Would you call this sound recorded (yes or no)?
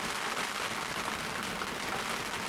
yes